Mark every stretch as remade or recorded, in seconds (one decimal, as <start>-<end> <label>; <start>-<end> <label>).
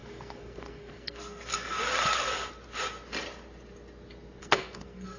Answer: 0.0-1.8 remade; 1.8-4.4 recorded; 4.4-5.2 remade